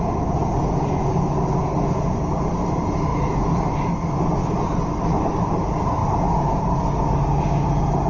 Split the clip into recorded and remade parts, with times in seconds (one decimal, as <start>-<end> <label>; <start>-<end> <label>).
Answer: 0.0-8.1 recorded